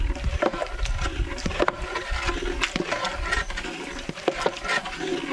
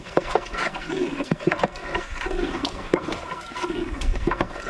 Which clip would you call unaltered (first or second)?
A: first